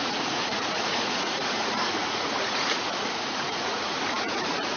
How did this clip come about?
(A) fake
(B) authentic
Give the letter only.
A